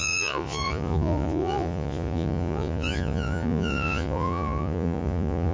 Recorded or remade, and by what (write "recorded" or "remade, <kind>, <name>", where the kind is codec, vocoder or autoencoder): remade, vocoder, Vocos